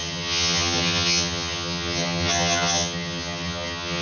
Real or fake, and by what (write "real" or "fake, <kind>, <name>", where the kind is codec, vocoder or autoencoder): fake, vocoder, HiFi-GAN